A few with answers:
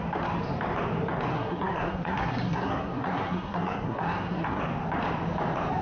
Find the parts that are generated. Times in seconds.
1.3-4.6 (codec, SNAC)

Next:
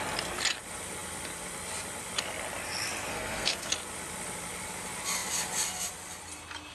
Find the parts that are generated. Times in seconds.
3.1-3.7 (codec, SNAC)

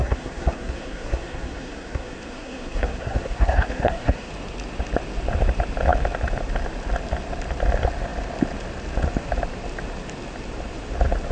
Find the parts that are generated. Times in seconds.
0.0-4.3 (codec, SNAC)

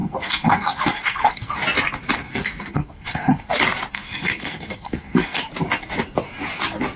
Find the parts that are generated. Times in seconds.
0.0-1.5 (codec, SNAC); 2.2-3.5; 3.9-5.4

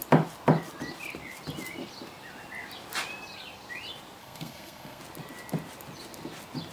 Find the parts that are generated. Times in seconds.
4.2-5.0 (codec, SNAC)

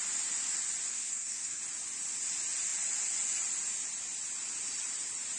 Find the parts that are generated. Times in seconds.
0.9-1.6 (codec, SNAC)

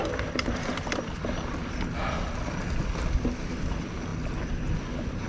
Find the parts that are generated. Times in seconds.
none

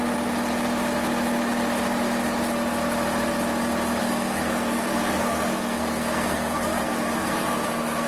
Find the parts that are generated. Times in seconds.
4.0-8.1 (codec, SNAC)